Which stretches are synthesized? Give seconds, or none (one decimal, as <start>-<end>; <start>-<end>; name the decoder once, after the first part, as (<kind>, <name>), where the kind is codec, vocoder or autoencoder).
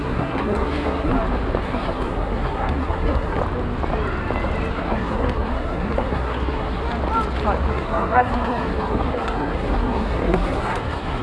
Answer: 0.0-1.1 (codec, SNAC); 1.6-3.4; 4.7-6.8; 7.7-11.2